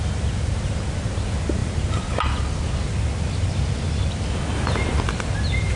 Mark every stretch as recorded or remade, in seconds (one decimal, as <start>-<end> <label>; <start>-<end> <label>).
0.0-5.8 recorded